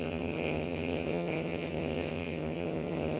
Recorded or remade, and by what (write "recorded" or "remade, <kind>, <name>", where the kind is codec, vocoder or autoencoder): remade, vocoder, HiFi-GAN